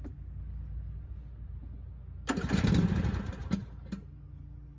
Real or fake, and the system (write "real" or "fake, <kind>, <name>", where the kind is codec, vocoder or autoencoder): real